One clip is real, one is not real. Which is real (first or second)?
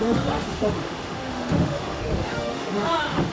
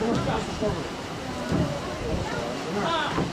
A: second